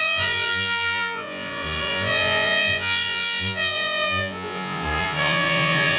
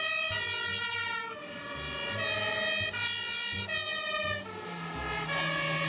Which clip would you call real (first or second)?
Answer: second